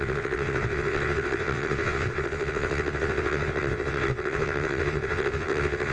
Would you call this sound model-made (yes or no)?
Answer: yes